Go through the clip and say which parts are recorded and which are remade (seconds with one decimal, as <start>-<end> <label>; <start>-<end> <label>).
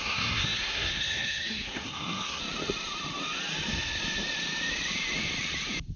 0.0-2.4 remade; 2.4-6.0 recorded